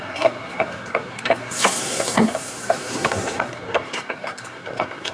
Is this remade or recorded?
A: remade